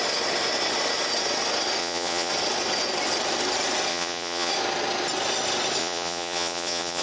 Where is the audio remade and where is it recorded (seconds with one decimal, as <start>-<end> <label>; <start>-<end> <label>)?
0.0-1.8 recorded; 1.8-2.3 remade; 2.3-3.9 recorded; 3.9-4.5 remade; 4.5-5.8 recorded; 5.8-7.0 remade